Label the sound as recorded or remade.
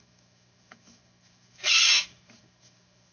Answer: remade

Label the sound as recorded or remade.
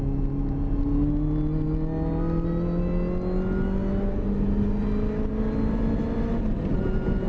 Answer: recorded